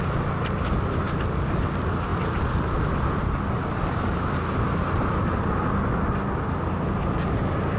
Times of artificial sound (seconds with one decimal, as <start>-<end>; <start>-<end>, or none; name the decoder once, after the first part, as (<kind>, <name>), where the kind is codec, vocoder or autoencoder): none